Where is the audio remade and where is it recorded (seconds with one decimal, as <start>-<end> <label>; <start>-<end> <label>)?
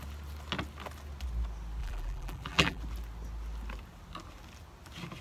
0.0-1.8 recorded; 1.8-2.8 remade; 2.8-5.2 recorded